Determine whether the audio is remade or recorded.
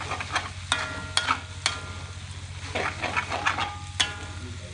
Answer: recorded